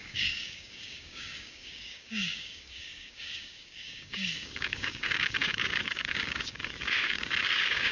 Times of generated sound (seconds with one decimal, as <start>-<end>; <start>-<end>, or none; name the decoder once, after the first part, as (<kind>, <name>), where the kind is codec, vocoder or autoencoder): 0.0-7.9 (codec, DAC)